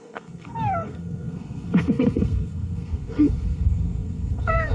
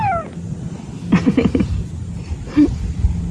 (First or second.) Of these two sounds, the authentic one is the second